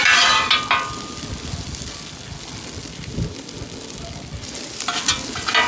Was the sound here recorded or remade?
recorded